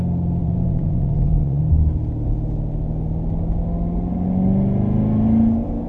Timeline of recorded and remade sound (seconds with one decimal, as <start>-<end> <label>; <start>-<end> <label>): 0.0-0.4 recorded; 0.4-1.6 remade; 1.6-5.9 recorded